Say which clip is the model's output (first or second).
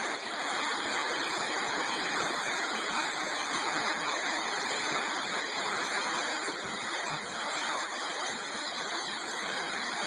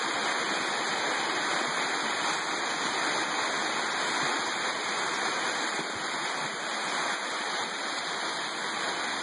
first